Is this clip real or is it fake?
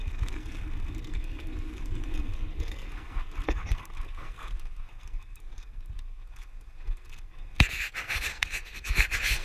fake